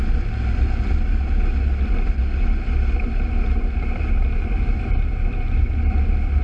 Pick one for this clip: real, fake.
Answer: real